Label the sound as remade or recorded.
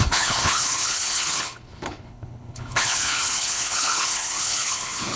remade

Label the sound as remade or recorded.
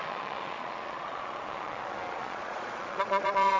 remade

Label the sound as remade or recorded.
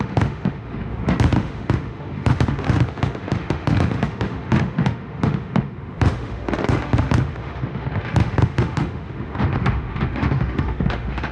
remade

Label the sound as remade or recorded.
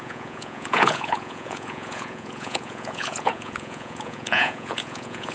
remade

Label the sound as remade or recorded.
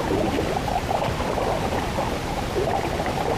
recorded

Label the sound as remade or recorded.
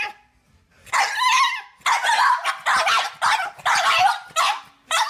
recorded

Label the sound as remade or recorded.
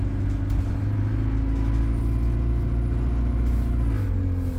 recorded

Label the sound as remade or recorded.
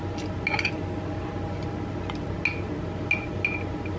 recorded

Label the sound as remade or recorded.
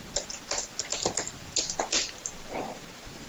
recorded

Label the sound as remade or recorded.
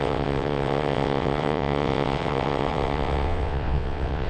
remade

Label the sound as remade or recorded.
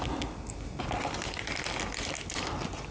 recorded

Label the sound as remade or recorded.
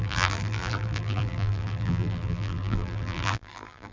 remade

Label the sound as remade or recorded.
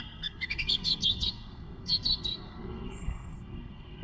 remade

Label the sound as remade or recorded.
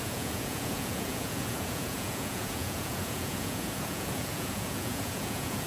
remade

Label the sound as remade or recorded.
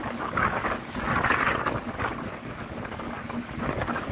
remade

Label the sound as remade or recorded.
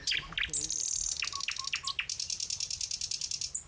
recorded